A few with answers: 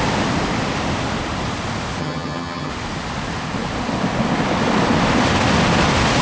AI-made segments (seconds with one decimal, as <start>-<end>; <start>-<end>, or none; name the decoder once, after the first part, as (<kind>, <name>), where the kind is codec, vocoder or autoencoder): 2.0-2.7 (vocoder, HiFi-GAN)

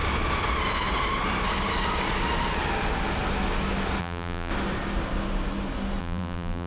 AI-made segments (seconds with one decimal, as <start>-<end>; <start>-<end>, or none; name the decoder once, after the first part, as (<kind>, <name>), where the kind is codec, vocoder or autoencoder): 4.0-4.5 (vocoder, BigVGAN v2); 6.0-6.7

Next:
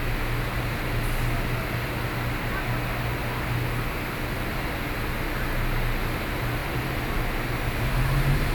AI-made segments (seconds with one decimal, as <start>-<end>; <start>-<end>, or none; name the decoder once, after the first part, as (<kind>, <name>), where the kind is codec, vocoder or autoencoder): none